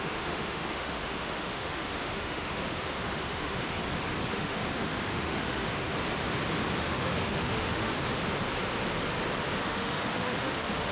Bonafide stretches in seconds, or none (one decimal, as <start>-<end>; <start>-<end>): 3.8-4.3; 5.9-6.8; 7.9-9.6